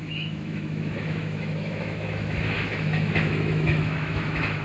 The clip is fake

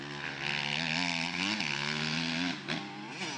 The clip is real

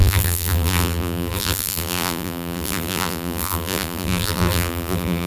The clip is fake